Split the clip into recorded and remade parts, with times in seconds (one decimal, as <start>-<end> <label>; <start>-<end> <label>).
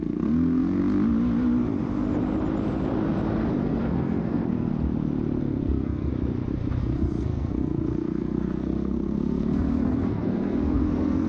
0.0-0.8 remade; 0.8-3.6 recorded; 3.6-4.7 remade; 4.7-5.4 recorded; 5.4-6.1 remade; 6.1-6.8 recorded; 6.8-11.3 remade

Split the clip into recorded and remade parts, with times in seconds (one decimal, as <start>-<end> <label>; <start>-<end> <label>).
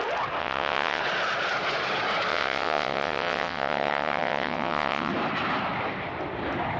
0.0-0.4 recorded; 0.4-1.0 remade; 1.0-2.3 recorded; 2.3-5.1 remade; 5.1-6.8 recorded